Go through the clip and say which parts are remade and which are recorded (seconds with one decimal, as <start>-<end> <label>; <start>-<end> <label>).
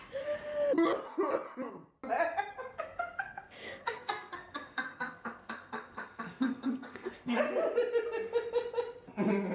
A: 0.0-2.5 recorded; 2.5-7.4 remade; 7.4-9.5 recorded